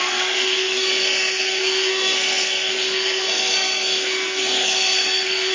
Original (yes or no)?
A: no